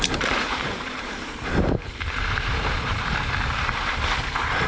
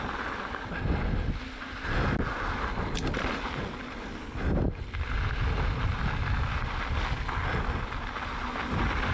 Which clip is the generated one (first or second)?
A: first